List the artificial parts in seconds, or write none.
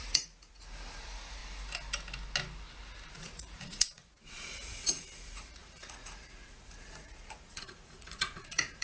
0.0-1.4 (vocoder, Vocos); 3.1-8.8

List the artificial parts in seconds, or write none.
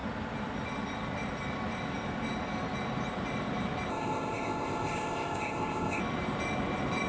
3.9-6.0 (codec, ZipCodec)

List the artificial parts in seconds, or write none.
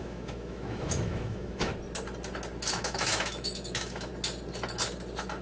0.0-1.7 (autoencoder, DAC-VAE); 2.7-4.1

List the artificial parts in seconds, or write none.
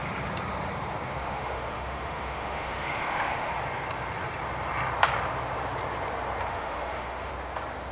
1.1-3.5 (autoencoder, DAC-VAE); 6.5-7.3